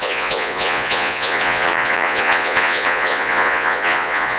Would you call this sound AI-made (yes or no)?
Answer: yes